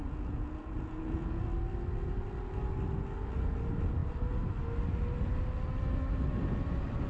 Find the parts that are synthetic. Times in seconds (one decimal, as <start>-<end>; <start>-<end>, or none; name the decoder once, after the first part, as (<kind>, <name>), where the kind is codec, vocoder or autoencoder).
0.0-1.4 (vocoder, Vocos)